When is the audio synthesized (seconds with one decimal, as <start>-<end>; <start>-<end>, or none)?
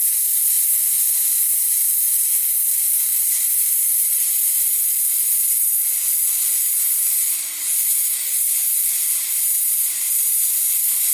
3.1-3.7; 9.5-10.1